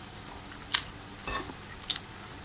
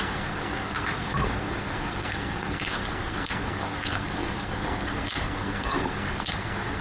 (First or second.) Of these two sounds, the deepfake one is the second